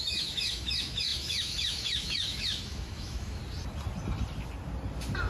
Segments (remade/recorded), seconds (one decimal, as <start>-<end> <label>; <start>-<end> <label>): 0.0-3.4 remade; 3.4-5.3 recorded